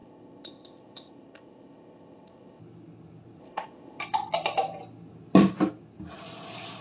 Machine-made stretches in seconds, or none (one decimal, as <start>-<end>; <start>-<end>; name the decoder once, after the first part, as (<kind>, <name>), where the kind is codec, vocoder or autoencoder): 0.0-2.6 (codec, ZipCodec); 3.4-4.0